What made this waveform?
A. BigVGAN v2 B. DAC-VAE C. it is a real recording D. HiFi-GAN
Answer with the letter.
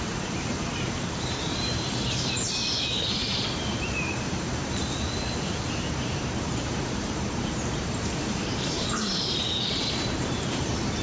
A